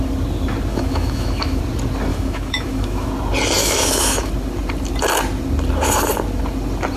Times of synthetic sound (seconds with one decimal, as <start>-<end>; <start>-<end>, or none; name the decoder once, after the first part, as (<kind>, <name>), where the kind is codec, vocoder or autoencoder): 0.7-1.6 (autoencoder, DAC-VAE); 2.1-3.1; 3.6-4.3